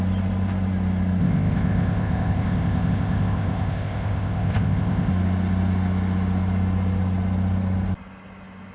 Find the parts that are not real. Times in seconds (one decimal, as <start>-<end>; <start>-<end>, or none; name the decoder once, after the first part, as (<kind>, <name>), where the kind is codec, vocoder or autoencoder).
1.2-5.1 (codec, ZipCodec)